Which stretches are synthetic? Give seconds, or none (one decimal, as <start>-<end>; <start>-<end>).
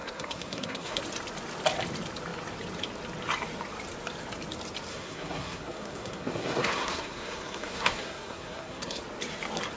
0.0-1.0; 4.9-9.0